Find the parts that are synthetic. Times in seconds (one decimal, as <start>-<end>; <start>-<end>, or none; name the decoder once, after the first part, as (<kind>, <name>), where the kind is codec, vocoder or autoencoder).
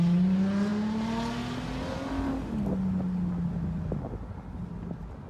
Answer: none